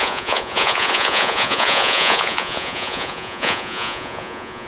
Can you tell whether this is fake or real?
fake